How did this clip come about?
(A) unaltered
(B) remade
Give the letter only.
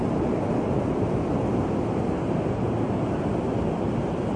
A